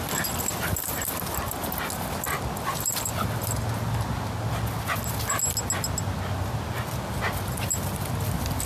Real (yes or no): yes